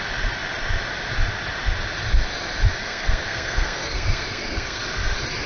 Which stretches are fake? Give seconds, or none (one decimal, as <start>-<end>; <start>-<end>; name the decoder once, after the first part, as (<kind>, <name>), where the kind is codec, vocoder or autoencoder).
2.8-4.8 (codec, SNAC)